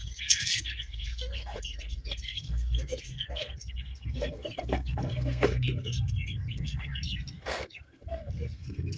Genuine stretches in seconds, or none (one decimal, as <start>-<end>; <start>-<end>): none